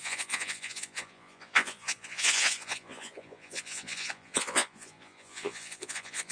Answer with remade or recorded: remade